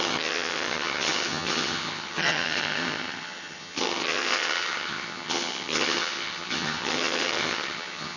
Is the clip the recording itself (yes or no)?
no